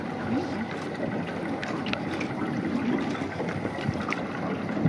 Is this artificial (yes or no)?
no